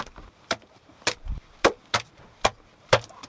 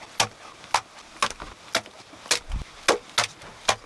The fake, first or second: first